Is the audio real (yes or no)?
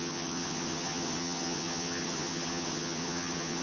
no